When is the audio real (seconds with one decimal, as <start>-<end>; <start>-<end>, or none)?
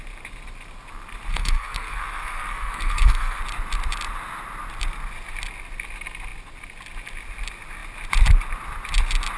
0.0-1.3; 3.4-9.4